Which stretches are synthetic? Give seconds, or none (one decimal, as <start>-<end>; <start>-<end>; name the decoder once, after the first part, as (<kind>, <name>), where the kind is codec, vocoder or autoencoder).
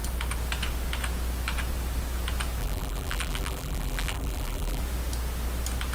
2.6-4.8 (vocoder, BigVGAN v2)